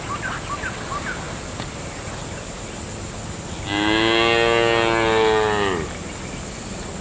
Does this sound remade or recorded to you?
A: recorded